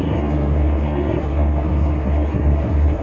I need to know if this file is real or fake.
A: fake